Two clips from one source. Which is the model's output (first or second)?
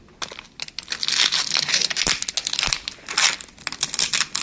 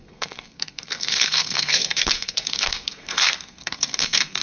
second